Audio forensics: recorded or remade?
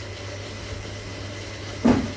recorded